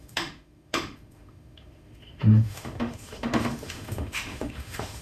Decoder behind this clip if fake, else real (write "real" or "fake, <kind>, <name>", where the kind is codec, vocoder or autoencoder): fake, autoencoder, DAC-VAE